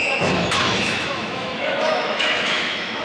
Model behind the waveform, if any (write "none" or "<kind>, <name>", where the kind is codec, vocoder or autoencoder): autoencoder, DAC-VAE